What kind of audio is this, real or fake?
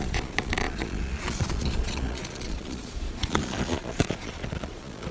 fake